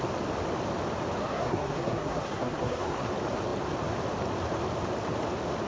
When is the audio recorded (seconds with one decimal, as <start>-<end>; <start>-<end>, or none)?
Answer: 0.0-1.2; 3.1-5.7